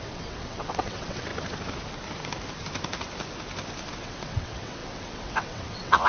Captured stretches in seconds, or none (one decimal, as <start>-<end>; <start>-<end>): 1.3-3.9